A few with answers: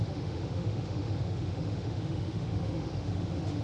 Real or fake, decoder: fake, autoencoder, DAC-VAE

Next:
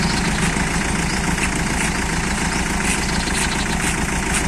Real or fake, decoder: real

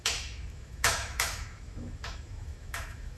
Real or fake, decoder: fake, autoencoder, DAC-VAE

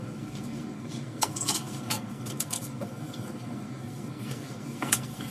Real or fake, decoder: fake, codec, SNAC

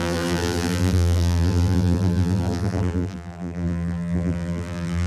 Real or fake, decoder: fake, vocoder, BigVGAN v2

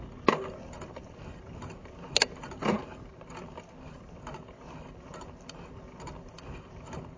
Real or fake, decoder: real